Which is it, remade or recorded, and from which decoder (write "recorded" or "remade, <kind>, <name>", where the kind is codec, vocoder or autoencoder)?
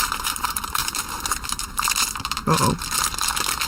remade, vocoder, BigVGAN v2